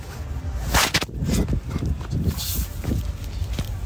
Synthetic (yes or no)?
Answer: no